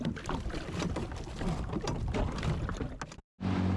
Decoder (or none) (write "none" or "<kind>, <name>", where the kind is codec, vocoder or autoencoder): none